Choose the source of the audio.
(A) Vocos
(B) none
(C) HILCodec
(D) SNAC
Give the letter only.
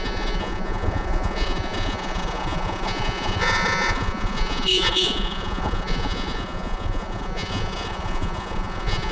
A